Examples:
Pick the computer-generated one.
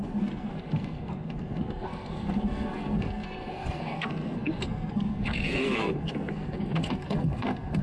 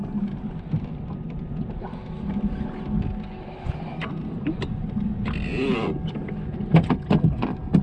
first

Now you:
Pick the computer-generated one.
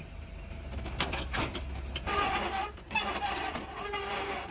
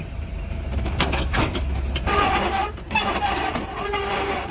second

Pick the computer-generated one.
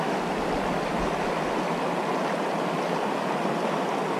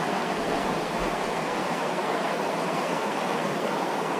second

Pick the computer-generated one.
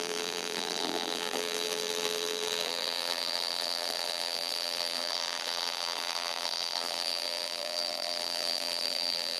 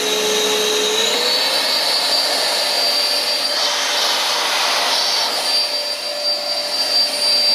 first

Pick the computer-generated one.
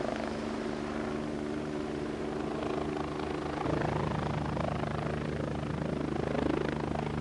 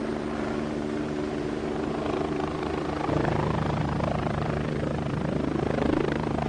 second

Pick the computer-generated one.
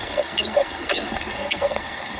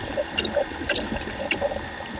first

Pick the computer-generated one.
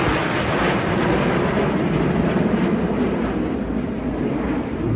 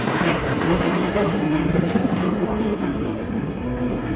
second